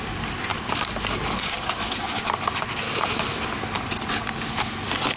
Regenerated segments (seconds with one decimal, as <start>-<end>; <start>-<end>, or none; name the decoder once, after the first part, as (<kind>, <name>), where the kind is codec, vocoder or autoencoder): none